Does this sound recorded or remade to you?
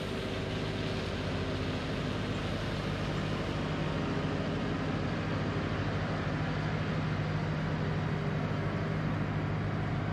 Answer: recorded